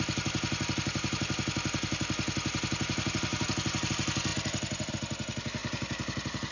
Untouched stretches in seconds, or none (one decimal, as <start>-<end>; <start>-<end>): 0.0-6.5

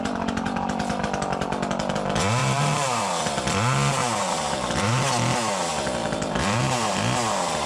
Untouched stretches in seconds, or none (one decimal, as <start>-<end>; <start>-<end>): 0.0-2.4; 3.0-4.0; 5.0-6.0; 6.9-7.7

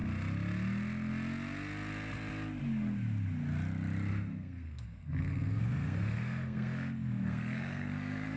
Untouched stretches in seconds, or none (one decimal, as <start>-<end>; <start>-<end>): 0.0-4.1

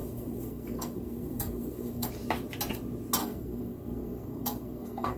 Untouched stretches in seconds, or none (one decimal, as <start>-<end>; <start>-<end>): 2.1-3.2

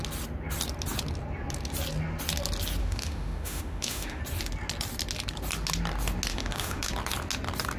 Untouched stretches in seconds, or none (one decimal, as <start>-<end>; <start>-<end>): 0.0-2.8; 4.2-6.3; 6.9-7.8

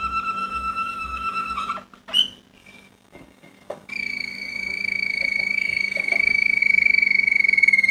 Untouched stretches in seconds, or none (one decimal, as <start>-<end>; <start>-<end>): 0.0-0.4; 1.7-2.6; 6.6-7.9

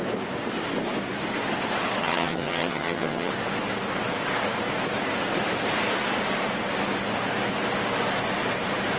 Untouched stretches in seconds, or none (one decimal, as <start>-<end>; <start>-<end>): 0.0-2.0; 3.3-9.0